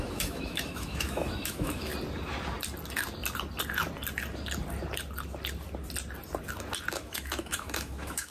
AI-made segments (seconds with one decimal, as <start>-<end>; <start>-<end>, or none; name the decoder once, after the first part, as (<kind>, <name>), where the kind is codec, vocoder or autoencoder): 0.0-1.9 (autoencoder, DAC-VAE); 6.9-8.3